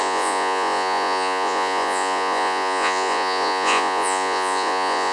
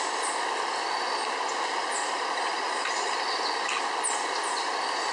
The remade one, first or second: first